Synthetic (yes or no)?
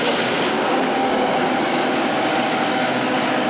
yes